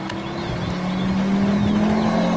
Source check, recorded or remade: recorded